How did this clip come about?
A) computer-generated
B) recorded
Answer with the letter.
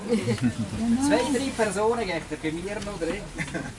B